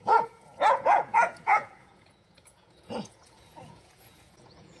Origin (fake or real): fake